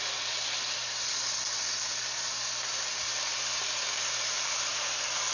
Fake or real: real